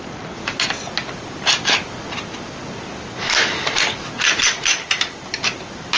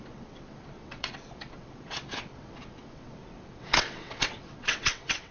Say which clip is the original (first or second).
first